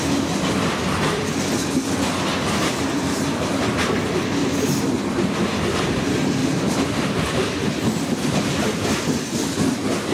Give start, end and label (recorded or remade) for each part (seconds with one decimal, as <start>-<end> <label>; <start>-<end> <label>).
0.0-6.4 recorded; 6.4-7.4 remade; 7.4-10.1 recorded